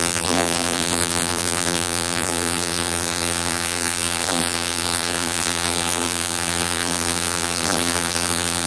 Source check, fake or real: fake